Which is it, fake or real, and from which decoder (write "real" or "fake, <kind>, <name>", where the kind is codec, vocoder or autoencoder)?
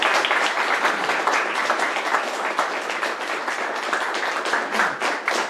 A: real